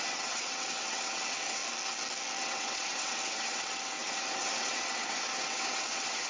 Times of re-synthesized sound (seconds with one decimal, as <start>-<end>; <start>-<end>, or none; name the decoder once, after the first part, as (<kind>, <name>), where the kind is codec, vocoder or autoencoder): 0.0-1.6 (vocoder, WaveNeXt); 2.4-6.3